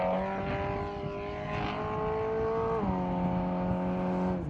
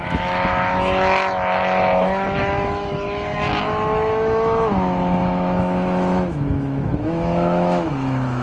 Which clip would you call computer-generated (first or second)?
second